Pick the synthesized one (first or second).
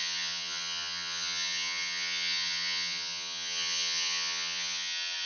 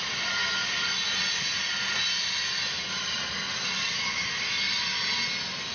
first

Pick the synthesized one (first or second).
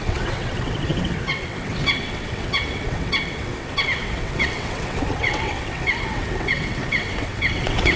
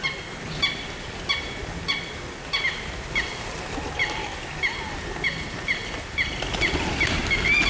first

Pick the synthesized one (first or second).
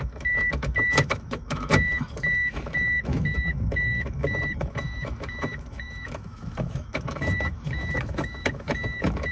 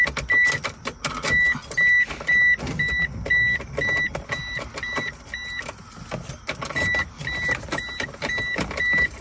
first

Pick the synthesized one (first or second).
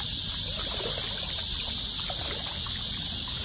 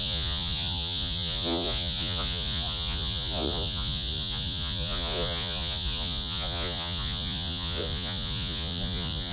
second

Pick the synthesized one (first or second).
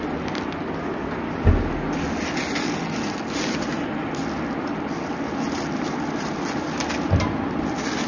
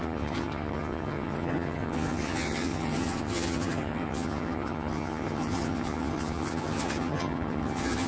second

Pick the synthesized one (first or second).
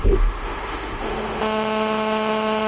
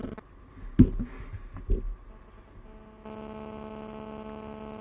first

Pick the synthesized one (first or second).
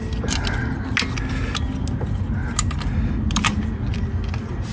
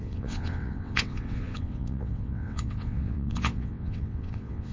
second